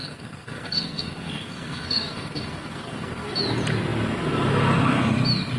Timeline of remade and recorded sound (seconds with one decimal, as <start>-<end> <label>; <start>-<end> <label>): 0.0-3.4 remade; 3.4-5.6 recorded